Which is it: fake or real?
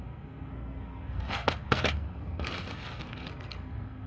fake